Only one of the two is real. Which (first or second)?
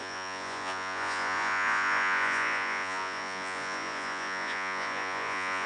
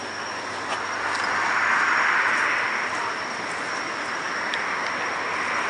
second